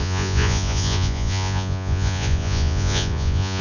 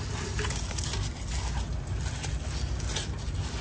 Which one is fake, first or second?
first